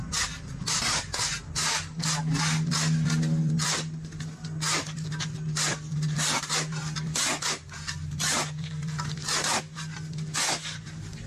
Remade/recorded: recorded